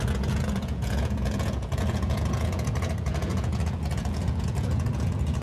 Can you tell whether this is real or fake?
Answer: fake